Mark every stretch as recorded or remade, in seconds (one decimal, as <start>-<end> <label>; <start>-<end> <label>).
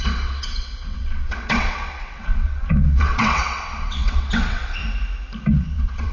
0.0-4.8 remade; 4.8-5.5 recorded; 5.5-6.1 remade